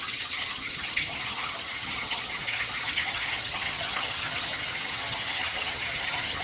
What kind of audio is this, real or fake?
fake